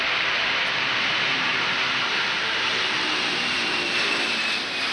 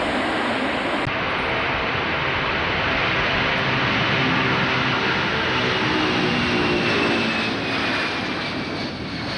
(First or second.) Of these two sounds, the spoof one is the first